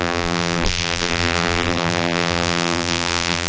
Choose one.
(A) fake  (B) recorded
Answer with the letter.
A